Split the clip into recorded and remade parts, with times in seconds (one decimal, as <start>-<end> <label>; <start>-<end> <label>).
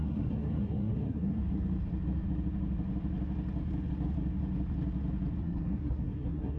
0.0-1.4 remade; 1.4-5.4 recorded; 5.4-6.6 remade